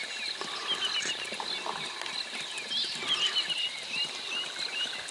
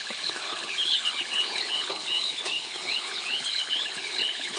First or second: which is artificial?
second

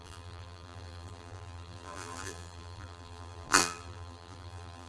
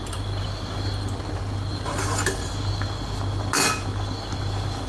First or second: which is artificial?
first